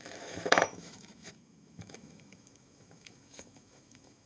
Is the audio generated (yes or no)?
yes